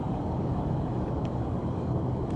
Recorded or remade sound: remade